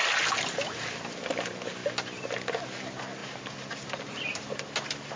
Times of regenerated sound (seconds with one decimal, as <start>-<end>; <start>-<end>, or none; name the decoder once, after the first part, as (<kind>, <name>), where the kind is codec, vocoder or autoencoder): none